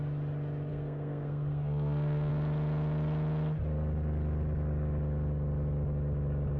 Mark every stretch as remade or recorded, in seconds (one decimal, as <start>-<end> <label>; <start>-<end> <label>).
0.0-0.7 recorded; 0.7-2.3 remade; 2.3-6.6 recorded